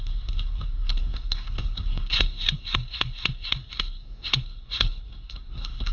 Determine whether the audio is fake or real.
fake